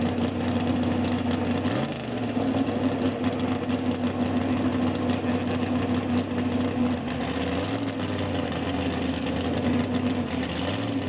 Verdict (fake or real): real